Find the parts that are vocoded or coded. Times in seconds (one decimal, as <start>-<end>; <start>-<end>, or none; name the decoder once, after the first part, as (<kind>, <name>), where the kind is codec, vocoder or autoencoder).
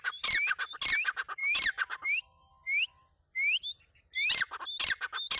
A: none